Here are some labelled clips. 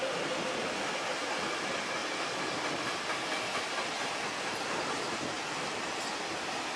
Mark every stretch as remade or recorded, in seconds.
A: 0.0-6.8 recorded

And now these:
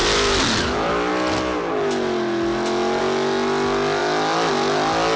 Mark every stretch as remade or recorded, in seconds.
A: 0.0-5.2 recorded

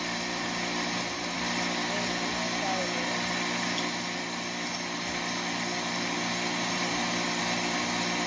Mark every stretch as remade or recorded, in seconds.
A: 0.0-8.3 recorded

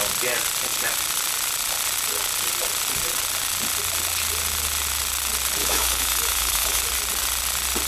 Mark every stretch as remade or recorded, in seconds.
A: 0.0-5.6 recorded; 5.6-6.8 remade; 6.8-7.9 recorded

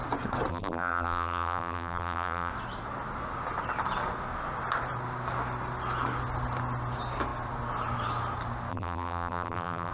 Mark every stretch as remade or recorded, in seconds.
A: 0.0-0.5 recorded; 0.5-2.5 remade; 2.5-8.7 recorded; 8.7-9.9 remade

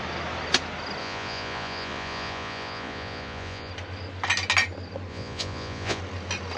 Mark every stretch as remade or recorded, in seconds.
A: 0.0-1.0 recorded; 1.0-3.7 remade; 3.7-5.1 recorded; 5.1-6.0 remade; 6.0-6.6 recorded

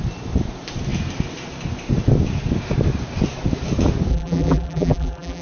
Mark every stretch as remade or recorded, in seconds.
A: 0.0-4.1 recorded; 4.1-5.4 remade